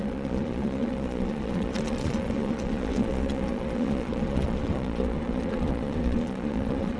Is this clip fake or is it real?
fake